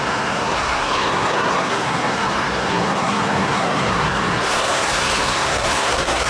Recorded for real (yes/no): no